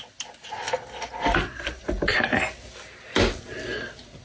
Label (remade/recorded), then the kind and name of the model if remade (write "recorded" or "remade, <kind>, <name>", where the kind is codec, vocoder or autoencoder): recorded